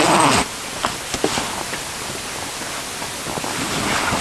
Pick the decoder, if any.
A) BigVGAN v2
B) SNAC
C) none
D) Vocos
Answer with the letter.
C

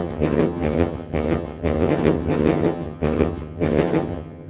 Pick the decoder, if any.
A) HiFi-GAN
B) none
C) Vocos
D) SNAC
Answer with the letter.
A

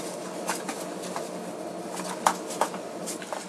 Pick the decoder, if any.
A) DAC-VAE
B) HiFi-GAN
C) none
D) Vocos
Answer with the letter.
C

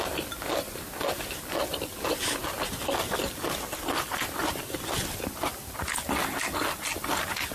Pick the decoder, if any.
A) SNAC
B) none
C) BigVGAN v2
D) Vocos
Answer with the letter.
B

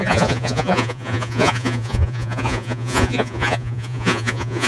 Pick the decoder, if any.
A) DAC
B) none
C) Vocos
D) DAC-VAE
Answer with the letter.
C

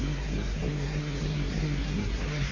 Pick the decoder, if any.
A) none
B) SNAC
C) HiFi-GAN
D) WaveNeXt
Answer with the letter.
B